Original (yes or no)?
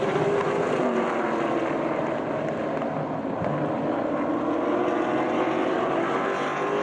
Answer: yes